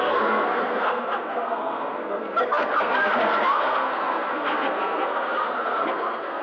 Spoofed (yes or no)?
yes